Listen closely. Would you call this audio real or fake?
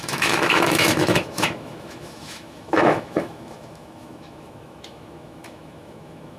fake